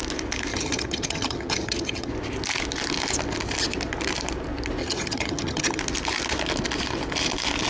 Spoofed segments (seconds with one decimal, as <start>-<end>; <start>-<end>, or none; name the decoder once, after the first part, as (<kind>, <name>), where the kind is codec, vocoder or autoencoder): 0.5-2.1 (vocoder, HiFi-GAN); 4.8-5.8